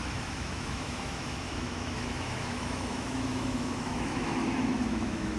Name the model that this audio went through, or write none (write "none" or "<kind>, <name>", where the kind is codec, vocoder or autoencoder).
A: autoencoder, DAC-VAE